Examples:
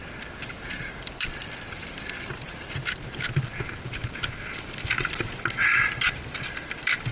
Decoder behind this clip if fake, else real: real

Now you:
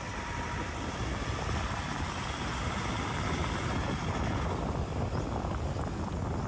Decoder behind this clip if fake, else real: real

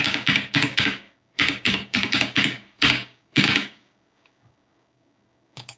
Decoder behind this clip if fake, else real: fake, codec, DAC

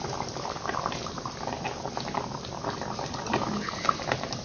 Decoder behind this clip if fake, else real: real